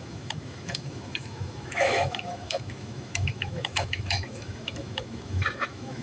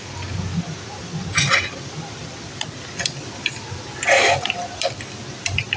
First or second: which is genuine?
second